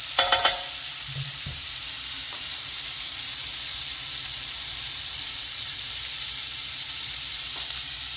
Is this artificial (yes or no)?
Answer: yes